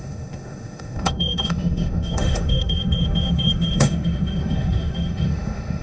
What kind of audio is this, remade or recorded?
remade